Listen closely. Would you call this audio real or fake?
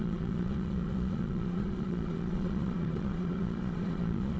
fake